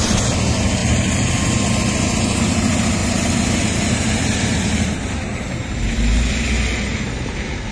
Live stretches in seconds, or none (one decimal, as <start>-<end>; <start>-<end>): 0.0-0.8; 1.3-3.0